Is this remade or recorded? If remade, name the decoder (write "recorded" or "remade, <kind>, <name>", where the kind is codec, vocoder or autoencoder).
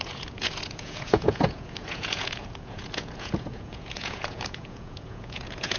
remade, vocoder, Vocos